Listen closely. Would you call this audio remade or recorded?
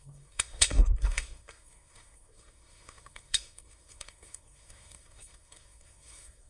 remade